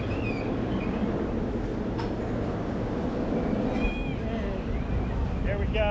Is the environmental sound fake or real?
real